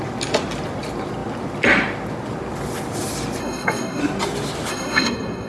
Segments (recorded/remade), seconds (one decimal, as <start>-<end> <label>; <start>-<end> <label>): 0.0-3.4 recorded; 3.4-4.0 remade; 4.0-4.7 recorded; 4.7-5.5 remade